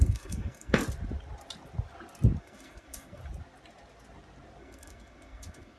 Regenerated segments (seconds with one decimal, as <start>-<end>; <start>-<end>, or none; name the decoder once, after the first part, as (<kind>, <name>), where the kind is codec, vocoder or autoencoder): 0.0-0.8 (codec, SNAC); 2.4-3.2; 4.6-5.8